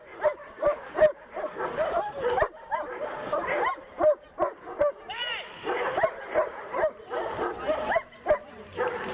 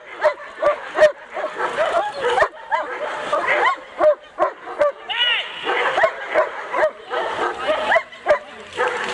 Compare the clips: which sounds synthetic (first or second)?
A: first